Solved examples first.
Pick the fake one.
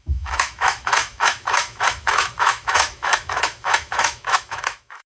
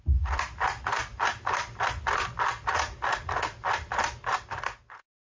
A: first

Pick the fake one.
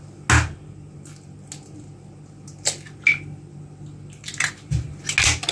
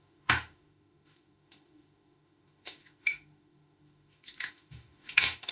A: second